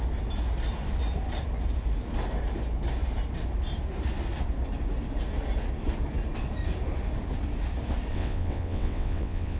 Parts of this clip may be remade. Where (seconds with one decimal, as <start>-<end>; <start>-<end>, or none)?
8.1-9.6